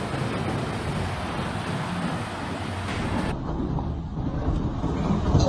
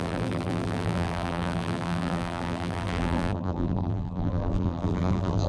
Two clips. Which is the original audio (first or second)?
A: first